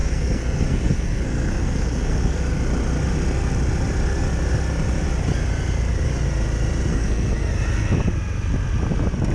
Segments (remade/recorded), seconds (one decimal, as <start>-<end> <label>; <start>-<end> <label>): 0.0-2.4 remade; 2.4-6.9 recorded; 6.9-7.5 remade; 7.5-9.3 recorded